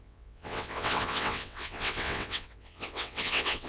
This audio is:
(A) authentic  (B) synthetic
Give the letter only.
B